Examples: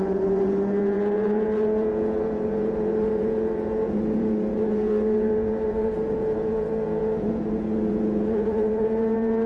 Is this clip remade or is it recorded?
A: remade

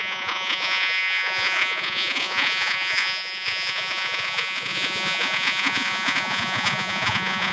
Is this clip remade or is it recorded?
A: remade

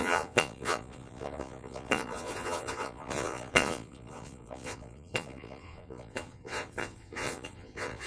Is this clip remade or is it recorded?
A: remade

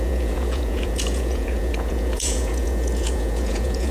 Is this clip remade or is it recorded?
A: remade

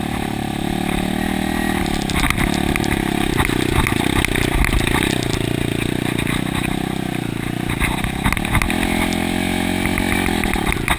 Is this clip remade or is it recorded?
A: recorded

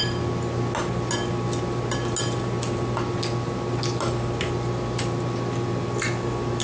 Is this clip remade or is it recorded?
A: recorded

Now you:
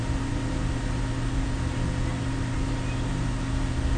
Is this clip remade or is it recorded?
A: recorded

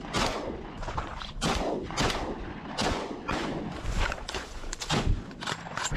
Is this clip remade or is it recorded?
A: remade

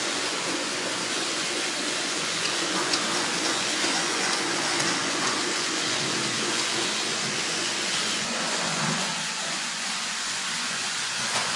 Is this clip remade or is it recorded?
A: remade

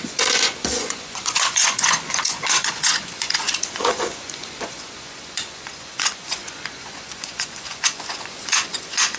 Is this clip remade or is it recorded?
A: remade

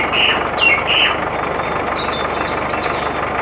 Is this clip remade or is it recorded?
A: recorded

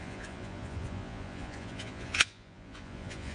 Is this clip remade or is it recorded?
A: remade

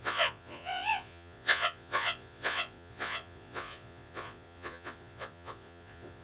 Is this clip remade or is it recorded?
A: remade